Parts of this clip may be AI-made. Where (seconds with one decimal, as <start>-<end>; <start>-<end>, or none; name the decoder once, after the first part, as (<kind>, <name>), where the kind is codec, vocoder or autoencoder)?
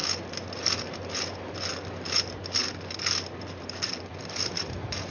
4.1-5.1 (vocoder, BigVGAN v2)